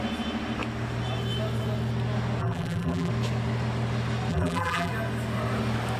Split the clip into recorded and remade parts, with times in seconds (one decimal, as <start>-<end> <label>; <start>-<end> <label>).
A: 0.0-2.4 recorded; 2.4-3.1 remade; 3.1-4.3 recorded; 4.3-4.9 remade; 4.9-6.0 recorded